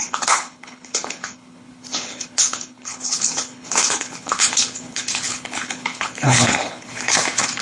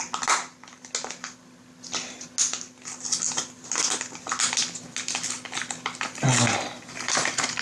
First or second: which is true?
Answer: second